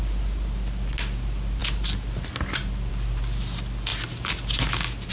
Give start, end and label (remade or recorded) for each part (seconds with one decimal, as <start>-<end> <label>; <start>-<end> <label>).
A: 0.0-5.1 recorded